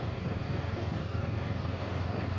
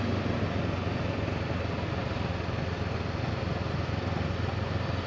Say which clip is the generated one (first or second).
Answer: first